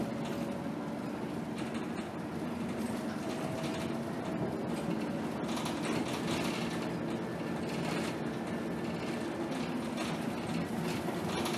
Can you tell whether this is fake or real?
real